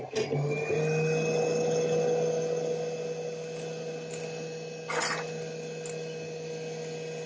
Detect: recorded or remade recorded